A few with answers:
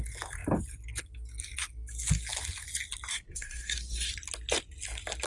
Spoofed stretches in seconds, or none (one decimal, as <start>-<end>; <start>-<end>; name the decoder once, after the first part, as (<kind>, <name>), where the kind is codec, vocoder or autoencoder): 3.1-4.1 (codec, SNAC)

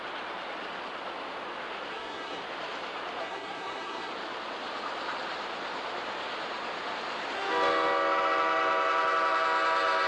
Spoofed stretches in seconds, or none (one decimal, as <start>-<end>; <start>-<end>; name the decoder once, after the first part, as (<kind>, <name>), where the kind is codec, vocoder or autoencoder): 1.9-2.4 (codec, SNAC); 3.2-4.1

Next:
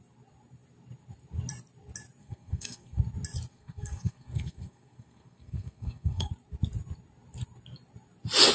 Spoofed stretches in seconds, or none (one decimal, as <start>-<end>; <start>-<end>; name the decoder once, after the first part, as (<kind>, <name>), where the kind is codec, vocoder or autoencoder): 2.2-3.0 (codec, SNAC); 3.5-6.3